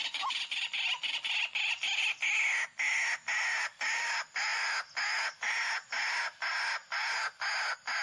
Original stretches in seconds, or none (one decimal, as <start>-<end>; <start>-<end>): 0.0-8.0